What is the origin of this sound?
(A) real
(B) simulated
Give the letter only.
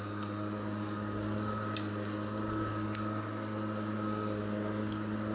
A